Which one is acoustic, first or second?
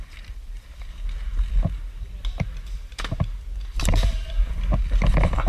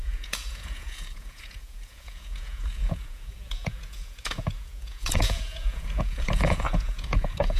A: first